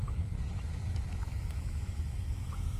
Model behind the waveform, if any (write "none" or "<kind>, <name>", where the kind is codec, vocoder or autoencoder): autoencoder, DAC-VAE